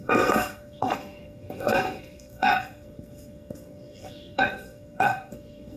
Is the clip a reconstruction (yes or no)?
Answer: yes